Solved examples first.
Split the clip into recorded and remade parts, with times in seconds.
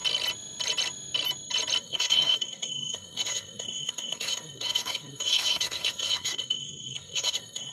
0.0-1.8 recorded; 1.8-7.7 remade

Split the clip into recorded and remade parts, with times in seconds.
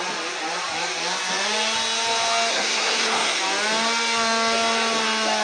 0.0-2.5 recorded; 2.5-3.4 remade; 3.4-5.4 recorded